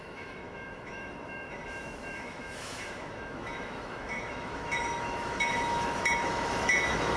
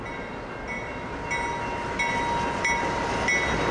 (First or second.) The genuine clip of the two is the second